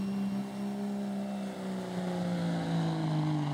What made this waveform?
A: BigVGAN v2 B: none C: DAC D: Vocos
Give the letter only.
B